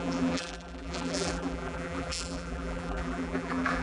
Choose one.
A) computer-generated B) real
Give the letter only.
A